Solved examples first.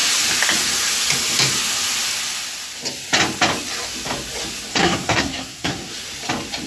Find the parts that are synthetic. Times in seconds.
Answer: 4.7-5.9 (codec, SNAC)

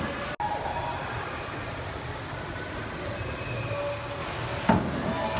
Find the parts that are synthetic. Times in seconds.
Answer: none

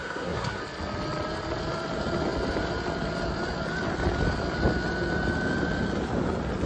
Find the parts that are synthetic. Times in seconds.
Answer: 0.0-0.6 (codec, SNAC)

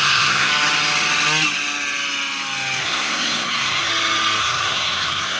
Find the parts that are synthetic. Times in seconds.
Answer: 0.0-0.5 (codec, SNAC); 2.8-3.9; 4.4-5.4

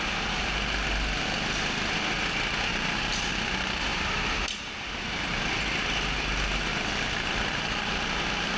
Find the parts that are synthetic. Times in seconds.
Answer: none

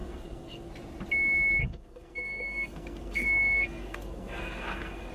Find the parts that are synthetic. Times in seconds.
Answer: 0.0-0.7 (codec, SNAC); 1.6-5.1

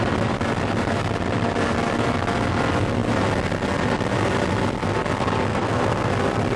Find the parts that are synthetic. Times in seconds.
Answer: 5.5-6.1 (codec, SNAC)

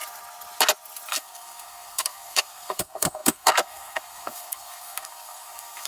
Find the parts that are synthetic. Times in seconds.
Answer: 1.1-5.9 (codec, SNAC)